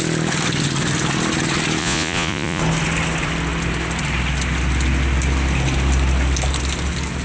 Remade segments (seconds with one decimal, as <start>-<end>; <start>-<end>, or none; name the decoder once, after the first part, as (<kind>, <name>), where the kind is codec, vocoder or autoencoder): 1.8-2.6 (vocoder, Vocos)